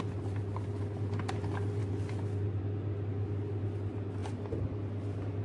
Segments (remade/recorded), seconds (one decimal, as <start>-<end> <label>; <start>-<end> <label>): 0.0-5.4 recorded